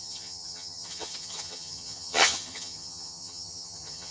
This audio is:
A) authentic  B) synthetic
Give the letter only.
B